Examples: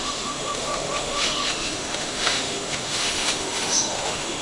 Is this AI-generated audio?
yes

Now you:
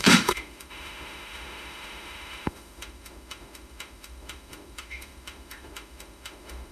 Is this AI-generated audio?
yes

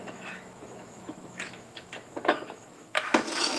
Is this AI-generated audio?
yes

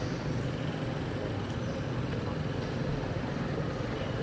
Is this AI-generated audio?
no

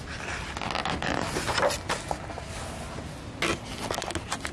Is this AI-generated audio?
no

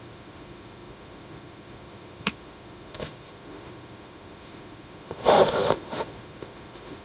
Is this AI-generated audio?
yes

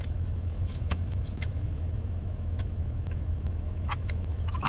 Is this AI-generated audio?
yes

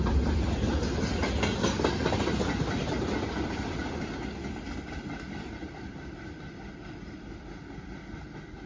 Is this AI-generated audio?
no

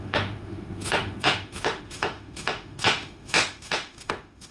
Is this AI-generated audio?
yes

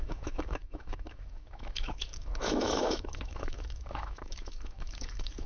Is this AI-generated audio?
yes